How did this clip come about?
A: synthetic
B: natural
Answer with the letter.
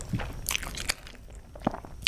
B